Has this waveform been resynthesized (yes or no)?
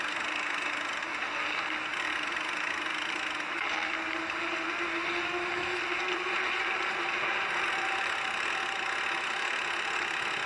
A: no